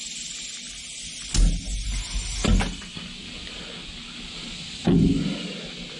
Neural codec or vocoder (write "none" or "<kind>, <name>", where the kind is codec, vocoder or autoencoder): none